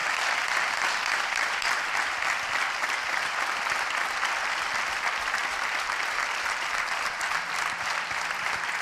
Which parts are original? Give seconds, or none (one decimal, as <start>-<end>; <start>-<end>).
0.0-5.4; 7.4-8.8